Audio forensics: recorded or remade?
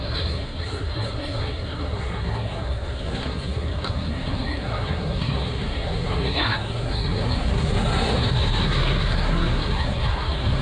remade